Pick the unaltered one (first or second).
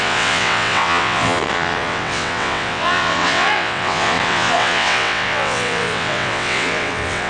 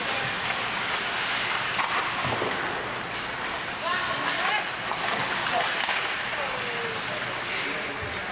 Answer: second